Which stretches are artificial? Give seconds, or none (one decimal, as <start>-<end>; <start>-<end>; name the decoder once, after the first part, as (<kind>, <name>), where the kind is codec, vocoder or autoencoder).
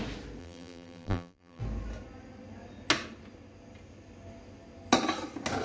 0.4-1.6 (vocoder, BigVGAN v2)